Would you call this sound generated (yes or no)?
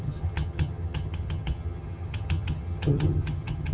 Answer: yes